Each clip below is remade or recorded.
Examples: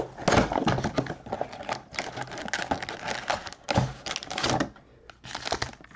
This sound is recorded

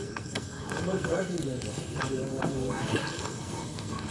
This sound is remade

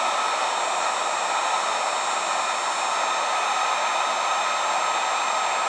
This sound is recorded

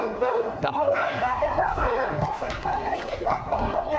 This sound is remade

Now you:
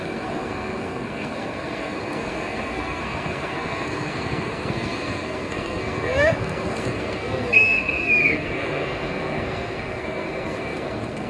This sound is remade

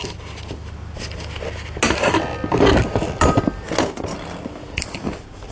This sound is recorded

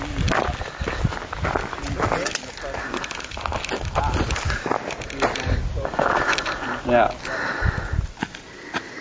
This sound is recorded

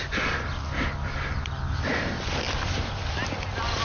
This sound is recorded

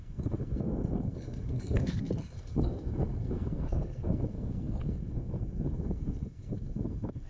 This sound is remade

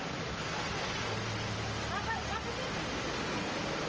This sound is recorded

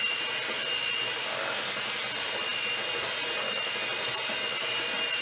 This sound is recorded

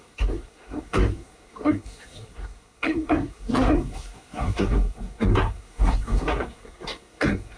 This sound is remade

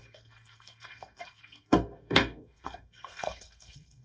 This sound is remade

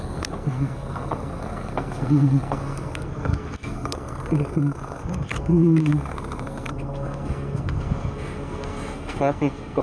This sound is remade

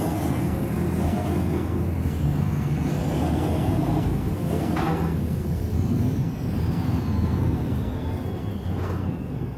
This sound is remade